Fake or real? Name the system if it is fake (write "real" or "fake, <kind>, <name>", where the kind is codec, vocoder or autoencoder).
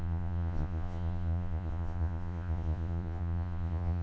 fake, vocoder, Vocos